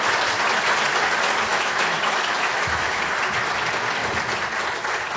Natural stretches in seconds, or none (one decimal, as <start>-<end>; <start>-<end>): 0.0-1.5; 3.0-5.2